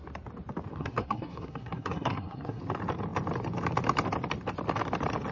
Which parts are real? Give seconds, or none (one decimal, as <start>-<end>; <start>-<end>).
0.0-0.7; 2.6-5.3